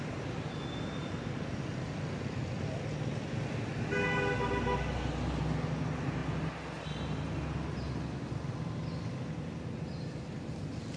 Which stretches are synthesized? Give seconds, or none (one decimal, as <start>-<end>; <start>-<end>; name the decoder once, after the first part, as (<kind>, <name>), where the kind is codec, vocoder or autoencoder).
none